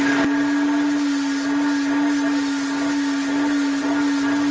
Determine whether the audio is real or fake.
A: real